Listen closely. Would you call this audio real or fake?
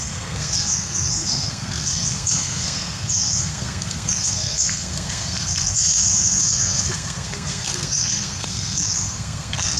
fake